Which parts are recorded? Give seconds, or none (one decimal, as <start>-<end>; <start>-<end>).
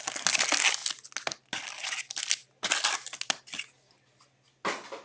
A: 0.0-5.0